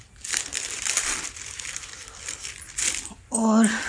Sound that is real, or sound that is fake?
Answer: real